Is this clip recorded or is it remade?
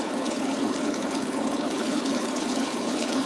remade